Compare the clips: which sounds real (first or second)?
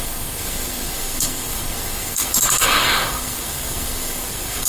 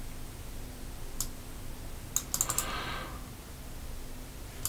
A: second